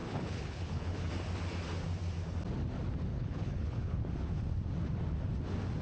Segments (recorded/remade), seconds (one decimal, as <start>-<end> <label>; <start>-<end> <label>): 0.0-1.1 remade; 1.1-3.1 recorded; 3.1-4.0 remade; 4.0-5.8 recorded